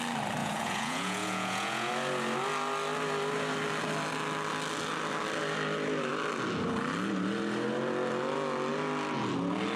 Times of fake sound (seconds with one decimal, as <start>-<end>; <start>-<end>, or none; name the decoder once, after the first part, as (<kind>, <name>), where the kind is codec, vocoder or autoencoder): 0.4-1.9 (vocoder, Vocos)